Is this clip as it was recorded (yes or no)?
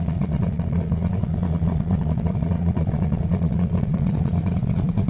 no